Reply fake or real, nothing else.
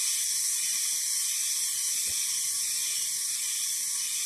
real